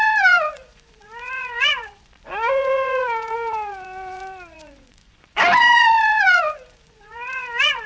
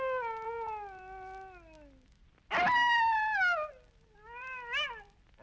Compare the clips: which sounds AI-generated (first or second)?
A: first